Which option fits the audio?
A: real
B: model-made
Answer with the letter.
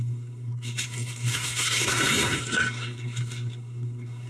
B